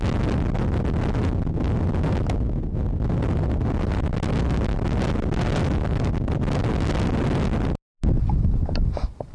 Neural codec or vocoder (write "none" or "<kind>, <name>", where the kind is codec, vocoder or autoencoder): none